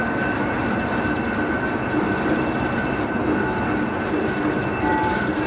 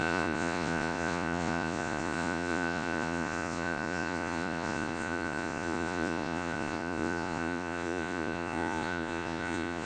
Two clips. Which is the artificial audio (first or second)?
second